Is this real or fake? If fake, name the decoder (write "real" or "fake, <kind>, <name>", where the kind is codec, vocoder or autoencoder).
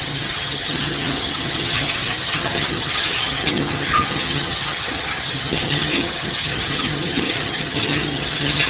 fake, vocoder, HiFi-GAN